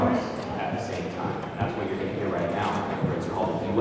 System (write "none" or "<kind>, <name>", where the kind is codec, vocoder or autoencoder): none